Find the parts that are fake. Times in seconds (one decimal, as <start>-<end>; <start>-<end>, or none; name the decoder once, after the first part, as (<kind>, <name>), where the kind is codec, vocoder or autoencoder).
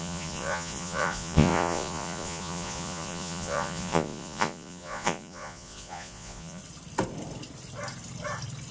0.0-6.6 (vocoder, Vocos)